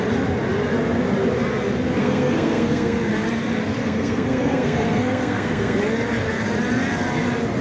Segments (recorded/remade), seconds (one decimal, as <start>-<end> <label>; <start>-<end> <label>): 0.0-2.0 recorded; 2.0-3.1 remade; 3.1-3.8 recorded; 3.8-5.8 remade; 5.8-7.6 recorded